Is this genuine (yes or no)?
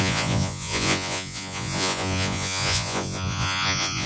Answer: no